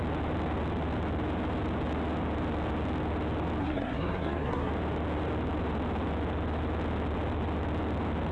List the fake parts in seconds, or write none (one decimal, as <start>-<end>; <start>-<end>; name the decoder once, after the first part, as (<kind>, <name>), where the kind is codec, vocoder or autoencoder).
3.6-4.7 (codec, SNAC)